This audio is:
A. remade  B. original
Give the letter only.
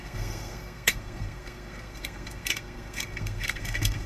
A